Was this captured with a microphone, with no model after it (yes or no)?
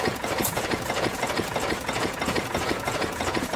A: no